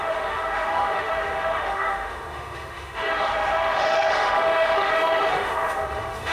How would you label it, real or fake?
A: fake